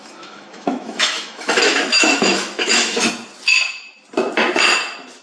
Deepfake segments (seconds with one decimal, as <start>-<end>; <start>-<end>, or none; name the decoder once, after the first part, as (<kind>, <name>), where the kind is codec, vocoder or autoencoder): 0.0-3.1 (autoencoder, DAC-VAE)

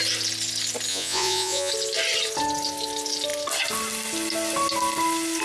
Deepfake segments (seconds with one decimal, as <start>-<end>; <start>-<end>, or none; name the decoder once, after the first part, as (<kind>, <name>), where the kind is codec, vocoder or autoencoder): 0.9-1.7 (vocoder, Vocos)